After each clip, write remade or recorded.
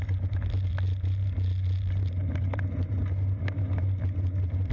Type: recorded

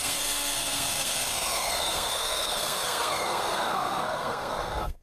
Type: remade